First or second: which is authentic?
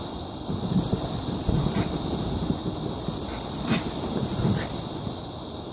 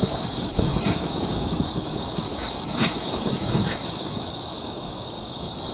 first